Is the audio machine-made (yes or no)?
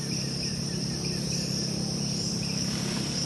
yes